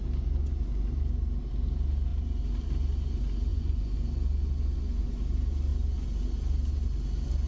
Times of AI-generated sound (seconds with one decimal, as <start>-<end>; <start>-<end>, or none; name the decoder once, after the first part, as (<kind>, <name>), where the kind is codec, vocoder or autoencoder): 3.5-4.0 (vocoder, Vocos)

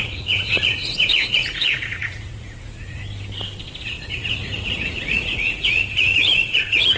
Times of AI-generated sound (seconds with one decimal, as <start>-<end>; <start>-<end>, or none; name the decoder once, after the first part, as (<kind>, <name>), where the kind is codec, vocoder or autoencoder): 0.0-3.0 (vocoder, Vocos); 3.8-7.0

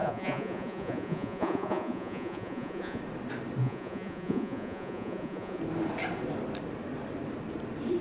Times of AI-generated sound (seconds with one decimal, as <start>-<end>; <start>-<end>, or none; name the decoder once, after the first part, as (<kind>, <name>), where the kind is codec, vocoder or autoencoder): 0.0-3.0 (vocoder, Vocos); 3.6-5.6

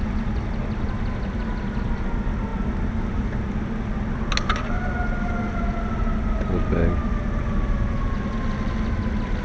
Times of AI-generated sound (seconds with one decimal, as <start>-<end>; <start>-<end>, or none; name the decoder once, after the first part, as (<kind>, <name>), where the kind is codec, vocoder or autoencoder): none

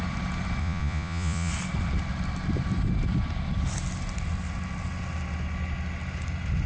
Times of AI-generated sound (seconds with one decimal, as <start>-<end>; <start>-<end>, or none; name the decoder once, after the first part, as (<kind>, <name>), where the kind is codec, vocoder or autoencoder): 0.6-1.5 (vocoder, Vocos)

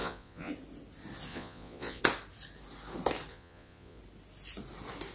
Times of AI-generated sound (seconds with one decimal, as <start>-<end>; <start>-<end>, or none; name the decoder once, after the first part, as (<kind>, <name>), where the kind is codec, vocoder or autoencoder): 0.0-0.5 (vocoder, Vocos); 1.3-2.0; 3.3-4.0

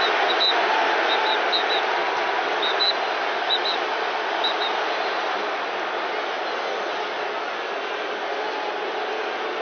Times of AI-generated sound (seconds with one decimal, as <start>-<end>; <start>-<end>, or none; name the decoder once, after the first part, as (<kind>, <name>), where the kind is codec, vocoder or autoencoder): none

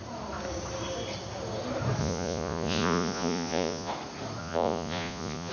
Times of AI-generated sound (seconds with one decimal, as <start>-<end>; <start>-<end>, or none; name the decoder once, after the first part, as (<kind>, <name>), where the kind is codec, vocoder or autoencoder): 2.0-3.9 (vocoder, Vocos); 4.4-5.5